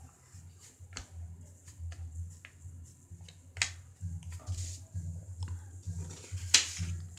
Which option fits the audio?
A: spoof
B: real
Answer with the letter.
B